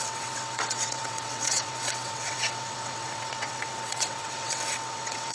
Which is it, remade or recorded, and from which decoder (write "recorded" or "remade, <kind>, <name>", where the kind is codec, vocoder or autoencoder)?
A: remade, vocoder, WaveNeXt